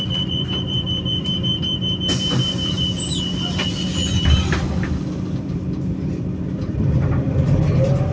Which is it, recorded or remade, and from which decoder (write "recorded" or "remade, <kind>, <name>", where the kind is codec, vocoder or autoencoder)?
remade, vocoder, BigVGAN v2